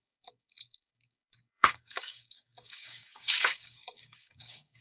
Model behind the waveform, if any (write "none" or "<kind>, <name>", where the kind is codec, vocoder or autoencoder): codec, DAC